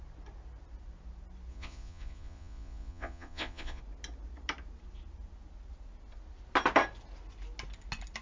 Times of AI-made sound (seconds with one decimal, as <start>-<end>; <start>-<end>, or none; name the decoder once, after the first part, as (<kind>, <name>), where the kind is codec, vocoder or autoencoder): 1.5-3.8 (vocoder, Vocos)